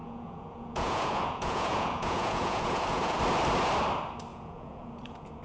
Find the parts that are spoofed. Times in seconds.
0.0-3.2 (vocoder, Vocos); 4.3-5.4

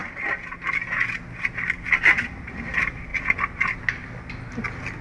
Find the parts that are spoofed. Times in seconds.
none

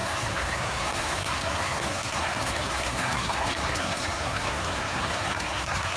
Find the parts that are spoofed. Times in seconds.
0.0-6.0 (codec, SNAC)

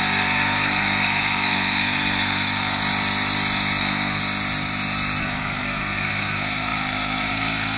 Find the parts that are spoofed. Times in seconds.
0.0-2.8 (codec, SNAC); 3.8-4.2; 5.2-7.8

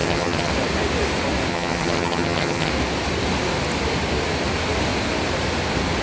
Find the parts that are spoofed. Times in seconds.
0.0-0.5 (vocoder, HiFi-GAN); 1.5-2.7

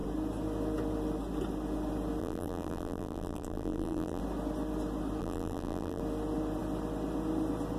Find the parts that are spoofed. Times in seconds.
2.2-4.2 (vocoder, BigVGAN v2); 5.2-6.0

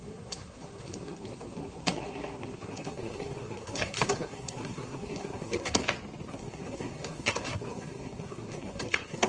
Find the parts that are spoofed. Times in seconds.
0.0-5.8 (codec, SNAC); 6.3-9.3